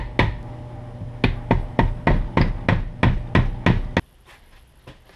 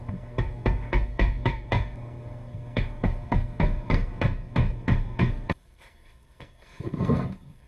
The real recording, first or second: first